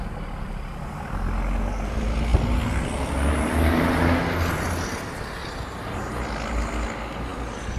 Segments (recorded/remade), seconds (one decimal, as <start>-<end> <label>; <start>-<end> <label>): 0.0-5.4 recorded; 5.4-6.2 remade; 6.2-7.8 recorded